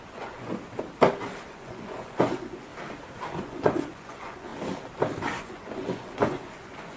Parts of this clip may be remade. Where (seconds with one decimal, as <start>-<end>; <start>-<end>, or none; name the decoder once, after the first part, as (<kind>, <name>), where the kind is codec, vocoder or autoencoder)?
0.0-0.5 (vocoder, Vocos); 1.5-2.7; 3.3-4.5; 5.4-7.0